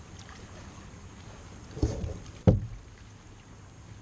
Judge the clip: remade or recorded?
recorded